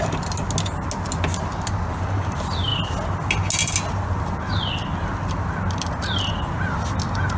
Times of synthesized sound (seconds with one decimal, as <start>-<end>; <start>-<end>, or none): none